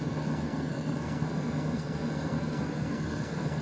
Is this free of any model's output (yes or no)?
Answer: no